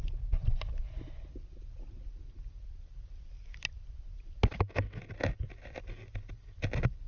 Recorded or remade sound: recorded